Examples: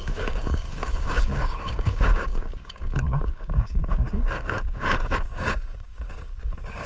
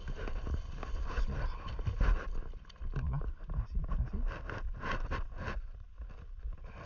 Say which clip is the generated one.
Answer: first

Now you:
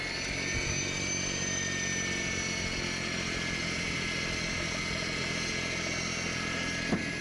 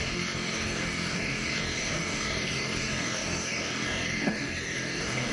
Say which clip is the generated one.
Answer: second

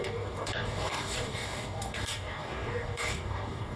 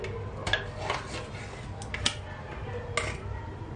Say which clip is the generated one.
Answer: first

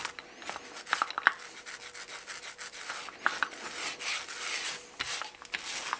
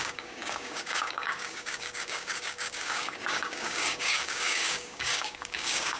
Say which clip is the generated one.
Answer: second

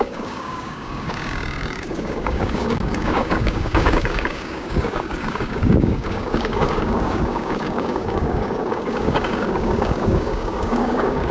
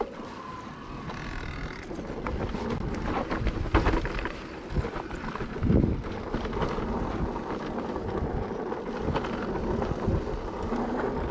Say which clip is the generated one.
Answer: first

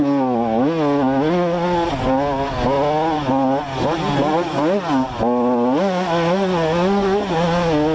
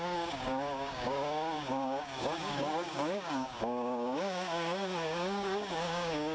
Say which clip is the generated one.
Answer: second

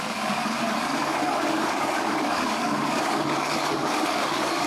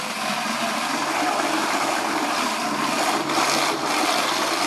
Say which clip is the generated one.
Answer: first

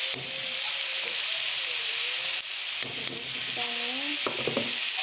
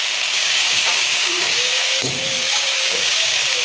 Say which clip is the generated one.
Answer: second